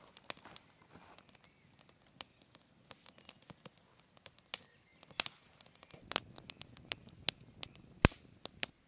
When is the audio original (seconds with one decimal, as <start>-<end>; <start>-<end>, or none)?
0.0-8.9